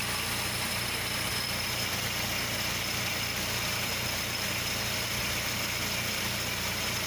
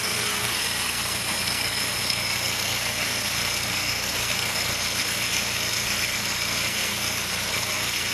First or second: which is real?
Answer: first